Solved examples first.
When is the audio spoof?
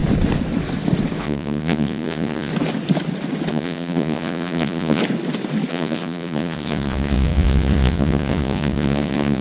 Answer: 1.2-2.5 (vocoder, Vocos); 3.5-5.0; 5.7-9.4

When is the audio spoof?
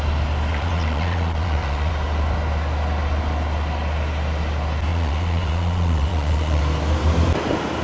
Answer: 0.5-1.9 (vocoder, Vocos); 4.9-6.6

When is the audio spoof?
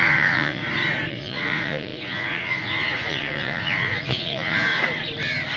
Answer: 0.0-0.6 (vocoder, Vocos); 1.1-4.7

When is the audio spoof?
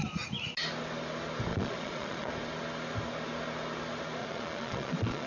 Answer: 1.5-2.3 (vocoder, Vocos); 4.2-5.3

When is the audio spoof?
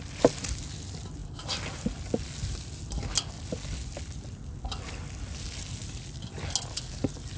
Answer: none